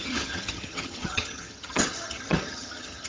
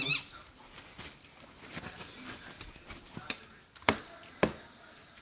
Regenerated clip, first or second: first